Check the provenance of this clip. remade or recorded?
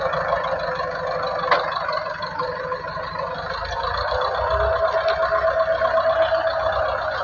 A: recorded